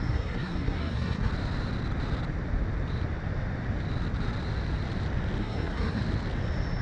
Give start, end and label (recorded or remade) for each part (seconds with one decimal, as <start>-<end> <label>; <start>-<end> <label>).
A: 0.0-1.3 remade; 1.3-5.4 recorded; 5.4-6.0 remade; 6.0-6.8 recorded